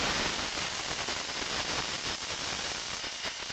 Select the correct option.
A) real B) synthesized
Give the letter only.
A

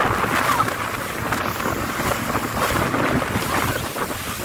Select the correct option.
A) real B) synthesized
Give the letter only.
A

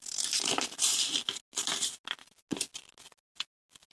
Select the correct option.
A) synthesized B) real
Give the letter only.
B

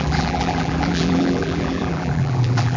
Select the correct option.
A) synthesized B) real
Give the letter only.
A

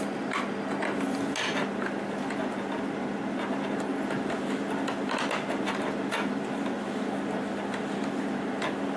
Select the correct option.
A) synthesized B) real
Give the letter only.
B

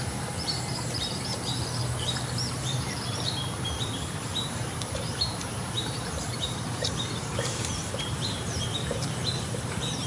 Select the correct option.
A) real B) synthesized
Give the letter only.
B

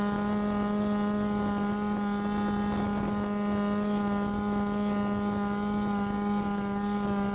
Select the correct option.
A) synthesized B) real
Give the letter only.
B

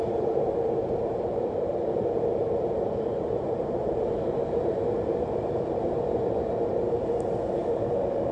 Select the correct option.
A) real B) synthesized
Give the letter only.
B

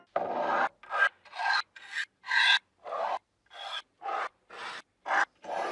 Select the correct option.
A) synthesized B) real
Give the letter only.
B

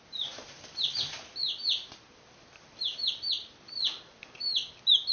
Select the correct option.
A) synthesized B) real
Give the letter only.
A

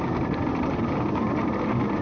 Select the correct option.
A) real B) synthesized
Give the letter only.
B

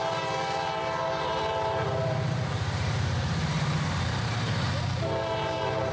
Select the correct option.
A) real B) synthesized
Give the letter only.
B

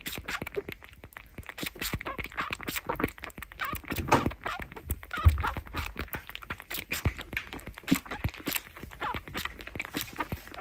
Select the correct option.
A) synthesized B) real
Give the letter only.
B